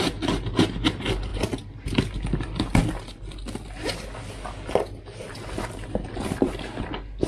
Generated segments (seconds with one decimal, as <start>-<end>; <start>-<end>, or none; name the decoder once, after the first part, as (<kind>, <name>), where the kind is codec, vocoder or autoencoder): none